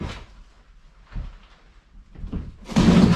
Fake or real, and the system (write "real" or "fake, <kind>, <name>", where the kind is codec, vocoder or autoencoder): real